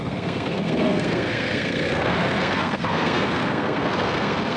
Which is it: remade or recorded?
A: remade